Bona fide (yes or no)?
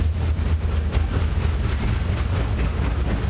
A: yes